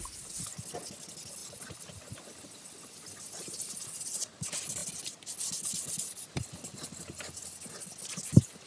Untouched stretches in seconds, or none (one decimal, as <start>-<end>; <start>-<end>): 0.0-8.7